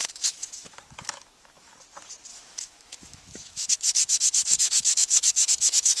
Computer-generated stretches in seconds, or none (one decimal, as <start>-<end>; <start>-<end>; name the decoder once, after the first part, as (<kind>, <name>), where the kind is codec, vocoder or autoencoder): 0.0-1.7 (autoencoder, DAC-VAE); 2.3-6.0